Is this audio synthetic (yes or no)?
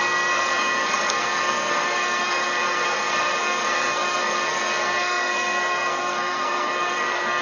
yes